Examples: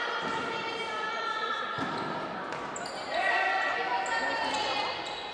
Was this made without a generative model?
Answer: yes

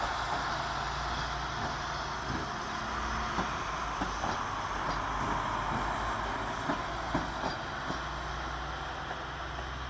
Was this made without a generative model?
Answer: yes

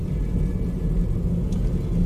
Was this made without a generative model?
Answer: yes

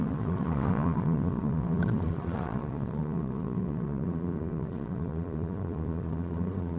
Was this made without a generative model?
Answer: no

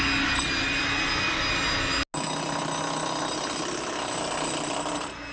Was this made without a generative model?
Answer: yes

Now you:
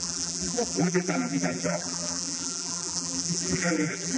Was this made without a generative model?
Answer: no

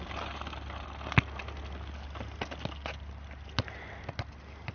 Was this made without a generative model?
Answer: yes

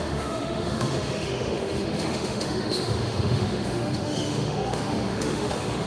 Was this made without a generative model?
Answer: no